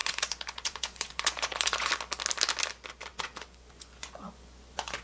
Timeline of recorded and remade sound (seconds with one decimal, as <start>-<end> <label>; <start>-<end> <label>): 0.0-1.9 remade; 1.9-3.1 recorded; 3.1-5.0 remade